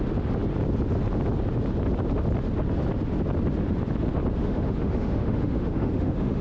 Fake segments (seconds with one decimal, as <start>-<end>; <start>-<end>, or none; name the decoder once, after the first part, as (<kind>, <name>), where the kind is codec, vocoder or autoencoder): 4.4-6.4 (autoencoder, DAC-VAE)